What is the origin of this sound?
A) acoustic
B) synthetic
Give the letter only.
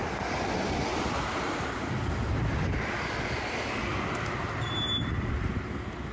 A